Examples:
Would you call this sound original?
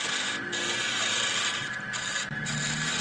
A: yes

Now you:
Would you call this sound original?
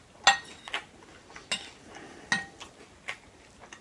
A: yes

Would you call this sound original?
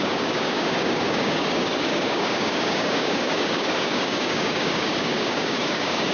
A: no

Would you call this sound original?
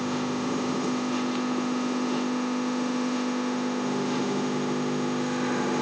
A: no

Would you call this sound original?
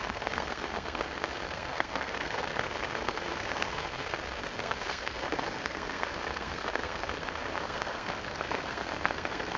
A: no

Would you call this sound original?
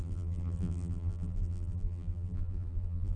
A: no